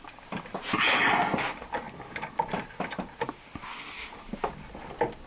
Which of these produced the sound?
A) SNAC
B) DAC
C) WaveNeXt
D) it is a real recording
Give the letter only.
D